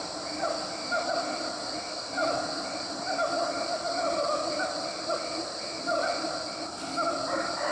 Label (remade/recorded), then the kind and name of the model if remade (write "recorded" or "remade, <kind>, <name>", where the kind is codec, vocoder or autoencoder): recorded